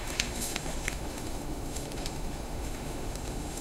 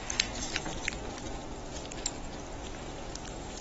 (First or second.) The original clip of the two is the second